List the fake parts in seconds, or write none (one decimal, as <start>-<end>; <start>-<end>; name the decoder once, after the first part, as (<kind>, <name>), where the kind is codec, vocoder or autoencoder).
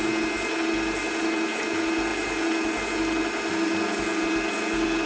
none